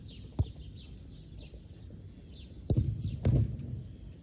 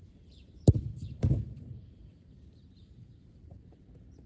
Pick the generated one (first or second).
second